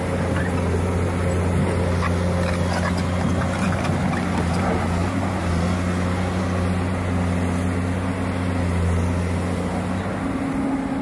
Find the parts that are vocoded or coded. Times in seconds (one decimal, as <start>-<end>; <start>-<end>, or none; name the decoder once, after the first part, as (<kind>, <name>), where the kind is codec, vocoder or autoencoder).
none